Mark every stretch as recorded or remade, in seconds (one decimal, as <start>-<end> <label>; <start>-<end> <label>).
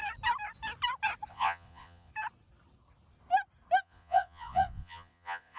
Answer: 0.0-1.3 recorded; 1.3-2.1 remade; 2.1-3.8 recorded; 3.8-5.6 remade